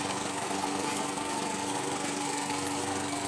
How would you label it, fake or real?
fake